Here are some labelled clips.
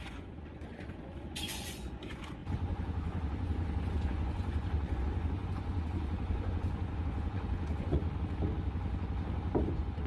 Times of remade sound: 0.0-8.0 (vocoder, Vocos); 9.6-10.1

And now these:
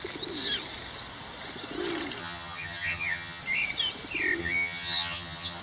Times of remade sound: 2.2-3.4 (vocoder, HiFi-GAN); 4.4-5.6

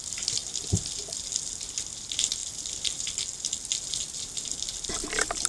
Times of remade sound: none

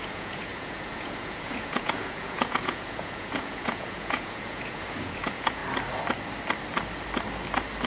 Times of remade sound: 0.0-5.6 (vocoder, Vocos)